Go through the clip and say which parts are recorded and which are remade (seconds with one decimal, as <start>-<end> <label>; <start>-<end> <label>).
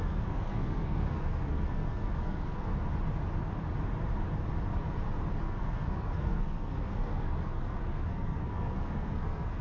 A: 0.0-2.7 remade; 2.7-5.4 recorded; 5.4-9.6 remade